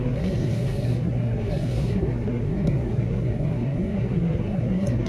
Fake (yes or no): yes